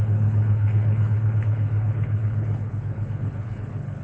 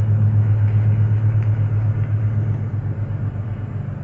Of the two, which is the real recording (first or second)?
second